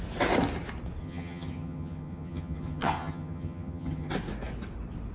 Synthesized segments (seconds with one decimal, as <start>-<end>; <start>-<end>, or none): 1.0-4.1